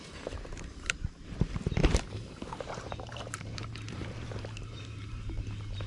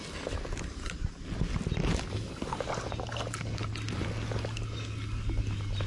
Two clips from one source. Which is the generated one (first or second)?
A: first